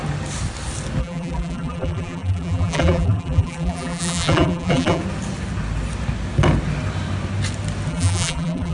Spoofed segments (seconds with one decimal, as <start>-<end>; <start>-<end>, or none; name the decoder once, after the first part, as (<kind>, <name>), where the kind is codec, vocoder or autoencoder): 1.0-5.0 (vocoder, BigVGAN v2); 7.9-8.7